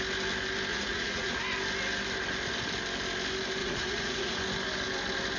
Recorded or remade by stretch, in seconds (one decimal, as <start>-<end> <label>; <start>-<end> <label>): 0.0-0.7 recorded; 0.7-1.4 remade; 1.4-3.6 recorded; 3.6-4.4 remade; 4.4-5.4 recorded